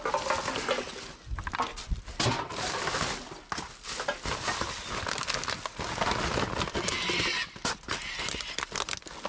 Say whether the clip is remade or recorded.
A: recorded